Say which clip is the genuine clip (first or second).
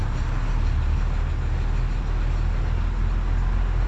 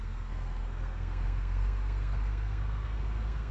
first